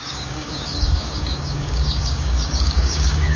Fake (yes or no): yes